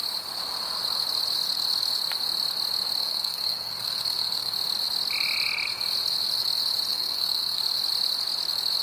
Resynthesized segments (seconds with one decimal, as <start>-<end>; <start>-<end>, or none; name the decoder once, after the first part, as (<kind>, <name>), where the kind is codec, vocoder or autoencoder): 3.0-4.5 (codec, SNAC); 6.9-7.6